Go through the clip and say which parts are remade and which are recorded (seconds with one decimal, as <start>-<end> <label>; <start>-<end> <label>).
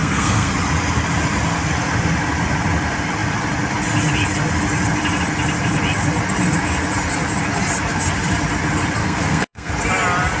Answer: 0.0-0.5 remade; 0.5-9.0 recorded; 9.0-9.7 remade; 9.7-10.4 recorded